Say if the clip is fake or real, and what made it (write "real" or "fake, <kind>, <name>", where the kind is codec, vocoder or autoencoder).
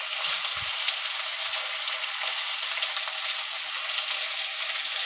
real